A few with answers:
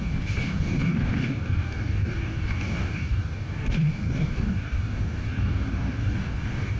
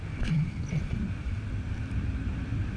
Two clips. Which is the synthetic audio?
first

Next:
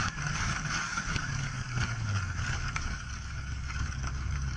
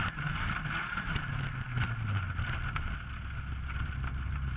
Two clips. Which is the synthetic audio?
first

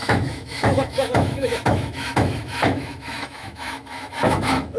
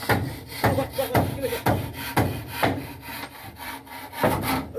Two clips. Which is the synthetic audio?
first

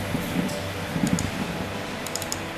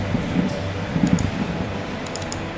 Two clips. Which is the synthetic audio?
second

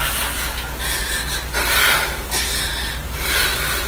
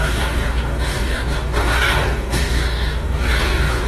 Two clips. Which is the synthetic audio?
second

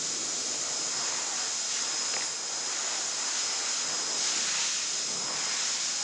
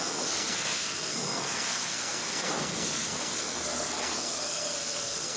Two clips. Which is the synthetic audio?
second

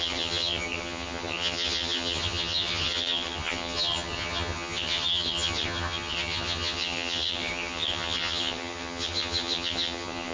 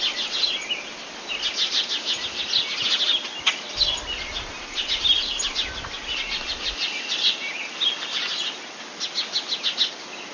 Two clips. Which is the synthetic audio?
first